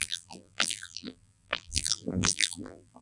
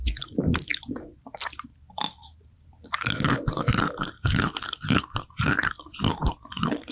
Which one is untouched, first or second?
second